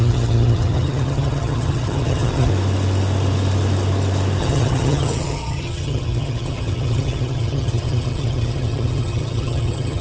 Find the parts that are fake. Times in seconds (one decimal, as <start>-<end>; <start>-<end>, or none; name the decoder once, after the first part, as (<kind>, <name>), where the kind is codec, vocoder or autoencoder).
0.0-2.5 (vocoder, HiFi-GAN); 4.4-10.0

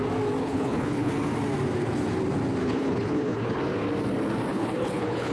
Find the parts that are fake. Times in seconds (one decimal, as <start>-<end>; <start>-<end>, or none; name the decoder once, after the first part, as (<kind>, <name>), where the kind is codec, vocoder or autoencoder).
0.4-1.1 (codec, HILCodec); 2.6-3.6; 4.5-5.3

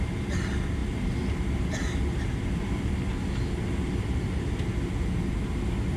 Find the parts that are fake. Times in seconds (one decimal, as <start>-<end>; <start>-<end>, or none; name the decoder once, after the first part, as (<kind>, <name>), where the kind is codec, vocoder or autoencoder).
0.8-2.9 (vocoder, BigVGAN v2)

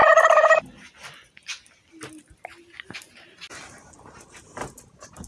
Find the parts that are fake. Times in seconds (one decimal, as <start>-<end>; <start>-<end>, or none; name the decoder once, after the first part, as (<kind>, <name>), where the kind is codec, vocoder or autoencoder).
none